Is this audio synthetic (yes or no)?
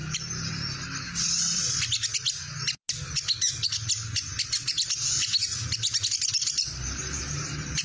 no